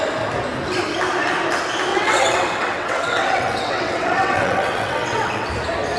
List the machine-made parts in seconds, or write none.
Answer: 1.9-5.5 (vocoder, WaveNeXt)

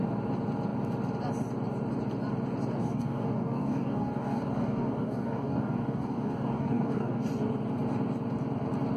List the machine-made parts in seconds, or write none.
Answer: 2.8-7.2 (codec, DAC)

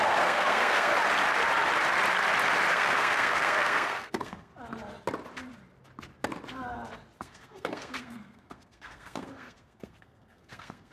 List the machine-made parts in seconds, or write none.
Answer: 0.0-0.9 (codec, SNAC); 2.7-4.5; 7.2-10.9

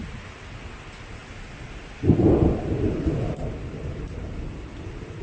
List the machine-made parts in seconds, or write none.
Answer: none

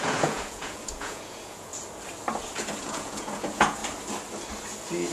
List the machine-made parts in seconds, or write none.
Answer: 0.0-1.7 (vocoder, Vocos); 2.8-3.8

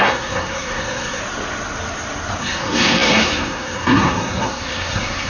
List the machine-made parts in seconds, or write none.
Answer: 0.0-1.2 (codec, SNAC); 2.4-5.3